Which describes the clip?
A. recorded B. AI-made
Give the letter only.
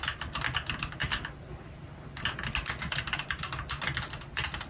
A